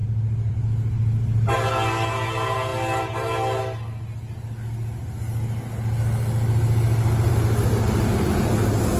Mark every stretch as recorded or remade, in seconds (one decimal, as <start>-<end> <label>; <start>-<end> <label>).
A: 0.0-9.0 recorded